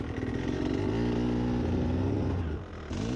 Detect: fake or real real